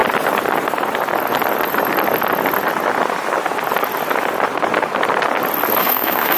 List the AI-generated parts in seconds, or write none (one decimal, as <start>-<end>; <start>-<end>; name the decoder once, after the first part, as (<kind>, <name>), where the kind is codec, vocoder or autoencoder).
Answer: 5.8-6.4 (autoencoder, DAC-VAE)